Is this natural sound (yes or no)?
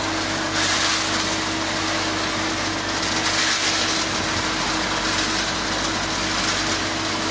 yes